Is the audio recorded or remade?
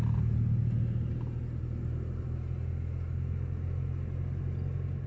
recorded